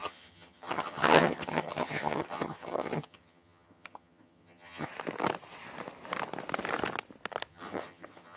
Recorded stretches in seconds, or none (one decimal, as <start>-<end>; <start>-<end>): 4.9-7.5